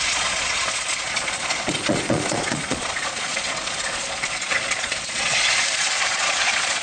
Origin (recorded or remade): remade